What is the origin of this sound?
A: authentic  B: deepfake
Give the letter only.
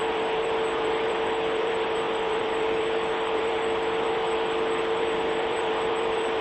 B